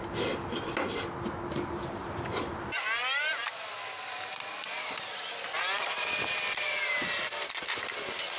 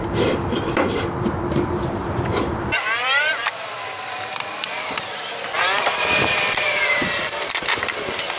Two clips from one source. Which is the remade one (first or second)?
second